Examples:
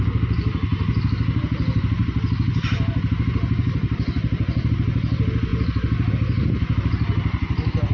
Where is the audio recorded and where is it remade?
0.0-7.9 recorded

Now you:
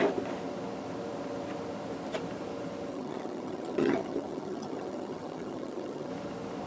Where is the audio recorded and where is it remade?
0.0-2.9 recorded; 2.9-6.1 remade; 6.1-6.7 recorded

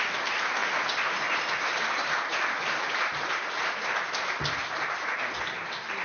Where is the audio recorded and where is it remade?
0.0-6.0 recorded